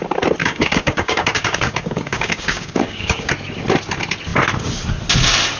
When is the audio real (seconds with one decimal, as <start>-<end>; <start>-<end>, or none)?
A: 0.0-0.4; 3.3-5.6